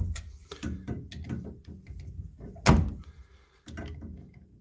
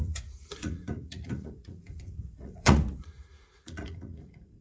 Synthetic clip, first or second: second